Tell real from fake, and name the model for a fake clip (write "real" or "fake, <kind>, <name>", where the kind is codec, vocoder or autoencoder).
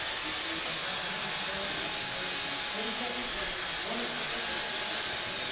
real